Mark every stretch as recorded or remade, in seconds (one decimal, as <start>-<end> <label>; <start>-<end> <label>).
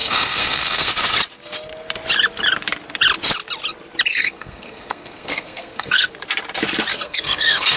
0.0-0.9 remade; 0.9-4.1 recorded; 4.1-6.1 remade; 6.1-6.9 recorded; 6.9-7.8 remade